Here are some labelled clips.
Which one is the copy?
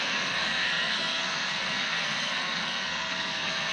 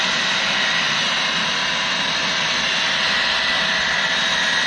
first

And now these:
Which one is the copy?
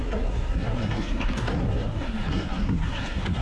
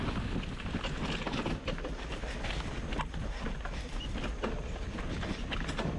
first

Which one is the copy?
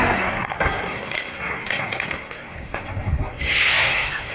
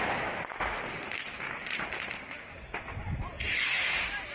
first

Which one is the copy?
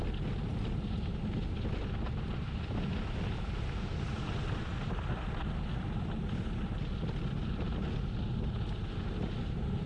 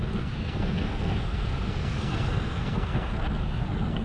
second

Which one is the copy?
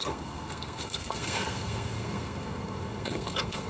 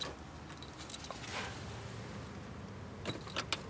first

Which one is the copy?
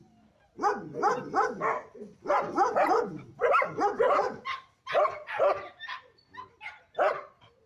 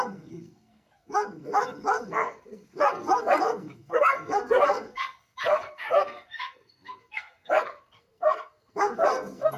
second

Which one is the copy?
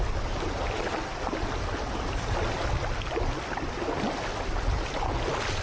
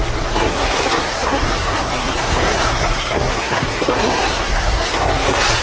second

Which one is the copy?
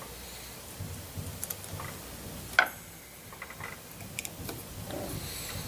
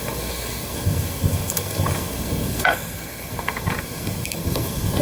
second